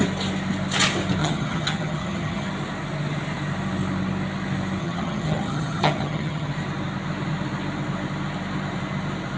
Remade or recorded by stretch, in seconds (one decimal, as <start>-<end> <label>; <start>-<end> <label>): 0.0-1.2 recorded; 1.2-2.5 remade; 2.5-4.8 recorded; 4.8-6.5 remade; 6.5-9.4 recorded